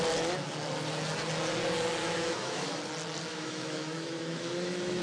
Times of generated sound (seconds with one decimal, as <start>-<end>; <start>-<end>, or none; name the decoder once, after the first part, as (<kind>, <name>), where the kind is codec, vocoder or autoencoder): 2.0-2.8 (autoencoder, DAC-VAE); 3.3-5.0